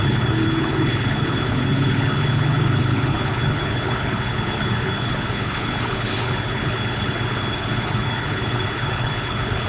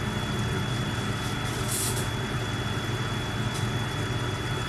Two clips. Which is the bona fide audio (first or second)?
second